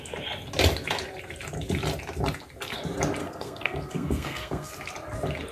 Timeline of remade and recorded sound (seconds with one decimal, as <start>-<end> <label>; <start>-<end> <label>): 0.0-3.2 recorded; 3.2-4.7 remade; 4.7-5.5 recorded